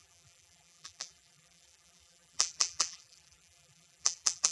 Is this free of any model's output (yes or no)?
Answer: no